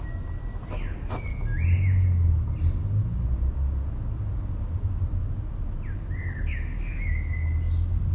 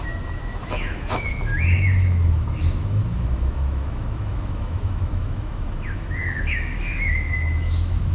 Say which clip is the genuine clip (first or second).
first